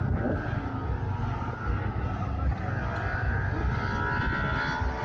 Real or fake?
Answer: real